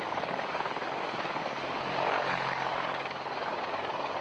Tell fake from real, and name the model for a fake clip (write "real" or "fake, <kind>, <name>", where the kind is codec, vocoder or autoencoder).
fake, codec, DAC